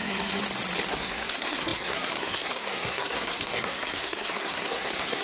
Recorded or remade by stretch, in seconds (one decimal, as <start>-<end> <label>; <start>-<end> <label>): 0.0-0.4 remade; 0.4-0.9 recorded; 0.9-5.2 remade